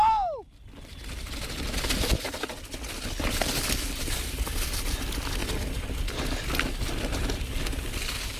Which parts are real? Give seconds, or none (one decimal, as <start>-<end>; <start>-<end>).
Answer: 0.0-8.4